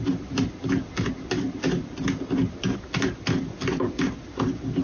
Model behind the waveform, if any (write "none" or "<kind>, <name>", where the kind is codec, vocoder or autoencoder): none